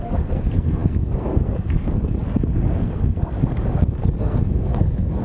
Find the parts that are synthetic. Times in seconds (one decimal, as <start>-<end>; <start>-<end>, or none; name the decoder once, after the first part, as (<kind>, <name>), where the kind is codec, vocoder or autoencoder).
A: 0.0-5.2 (codec, SNAC)